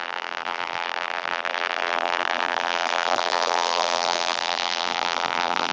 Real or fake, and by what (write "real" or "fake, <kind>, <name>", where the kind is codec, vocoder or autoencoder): fake, vocoder, BigVGAN v2